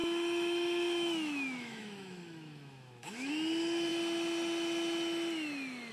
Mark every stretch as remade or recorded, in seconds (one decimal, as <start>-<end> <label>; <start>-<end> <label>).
0.0-3.3 remade; 3.3-5.9 recorded